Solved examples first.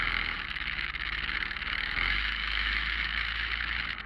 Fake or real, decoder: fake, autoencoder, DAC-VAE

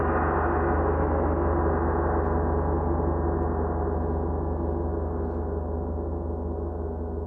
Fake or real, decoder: real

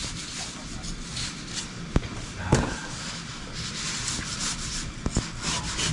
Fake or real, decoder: real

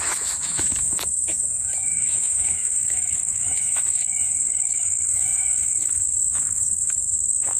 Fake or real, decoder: fake, autoencoder, DAC-VAE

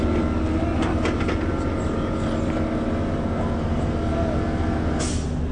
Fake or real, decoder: real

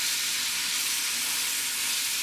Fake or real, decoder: real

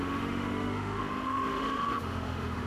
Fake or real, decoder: fake, autoencoder, DAC-VAE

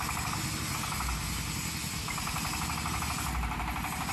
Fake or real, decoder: real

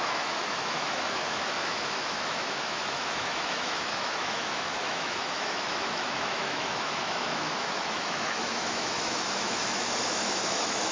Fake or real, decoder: fake, autoencoder, DAC-VAE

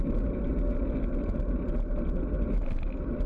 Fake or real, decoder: real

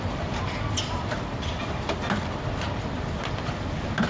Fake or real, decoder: real